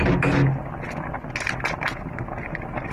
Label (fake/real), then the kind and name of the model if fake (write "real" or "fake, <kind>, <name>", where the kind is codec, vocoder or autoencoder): real